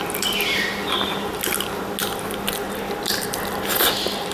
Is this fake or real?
real